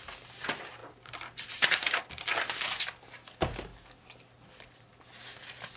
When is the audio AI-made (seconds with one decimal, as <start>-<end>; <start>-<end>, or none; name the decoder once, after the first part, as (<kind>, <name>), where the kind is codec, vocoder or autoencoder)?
0.8-2.0 (vocoder, BigVGAN v2)